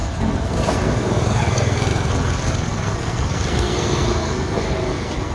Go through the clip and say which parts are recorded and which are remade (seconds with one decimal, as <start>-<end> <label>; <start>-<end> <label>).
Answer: 0.0-5.3 remade